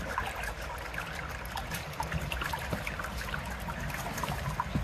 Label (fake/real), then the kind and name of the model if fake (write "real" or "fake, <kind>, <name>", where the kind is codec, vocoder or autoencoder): real